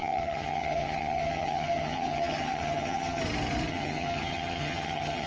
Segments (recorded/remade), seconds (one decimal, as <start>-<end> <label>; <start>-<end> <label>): 0.0-3.2 remade; 3.2-3.7 recorded; 3.7-5.3 remade